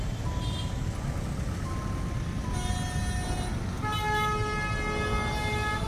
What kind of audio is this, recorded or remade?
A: recorded